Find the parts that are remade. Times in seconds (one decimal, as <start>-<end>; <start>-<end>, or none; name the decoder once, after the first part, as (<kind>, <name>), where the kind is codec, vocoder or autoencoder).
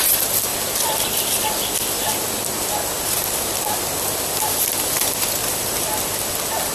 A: none